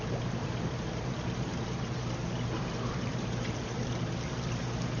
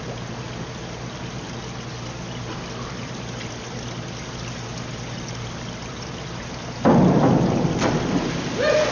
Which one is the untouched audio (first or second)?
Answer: second